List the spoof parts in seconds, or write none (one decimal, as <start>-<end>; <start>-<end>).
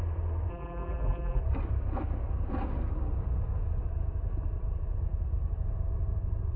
0.5-1.4